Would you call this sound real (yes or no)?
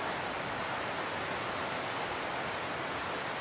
yes